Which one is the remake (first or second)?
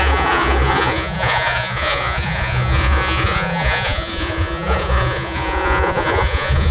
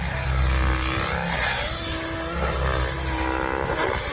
first